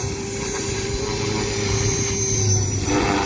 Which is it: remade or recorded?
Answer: remade